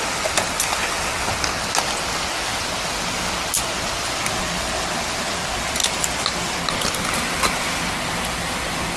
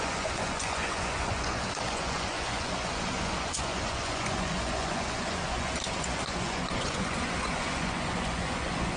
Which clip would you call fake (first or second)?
second